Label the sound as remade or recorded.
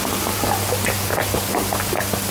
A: recorded